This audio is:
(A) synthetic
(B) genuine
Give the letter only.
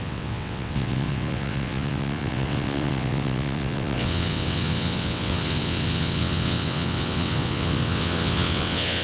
A